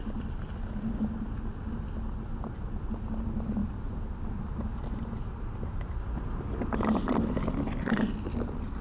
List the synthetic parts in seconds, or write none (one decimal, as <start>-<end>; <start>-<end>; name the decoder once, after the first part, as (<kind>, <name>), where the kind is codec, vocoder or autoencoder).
none